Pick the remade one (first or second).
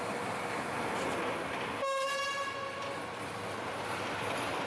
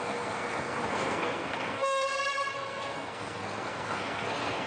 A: second